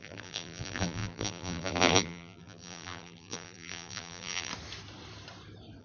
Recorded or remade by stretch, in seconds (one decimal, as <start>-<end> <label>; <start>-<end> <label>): 0.0-4.5 remade; 4.5-5.8 recorded